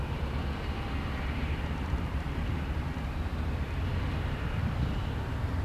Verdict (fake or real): fake